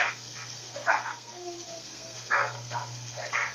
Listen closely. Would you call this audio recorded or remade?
remade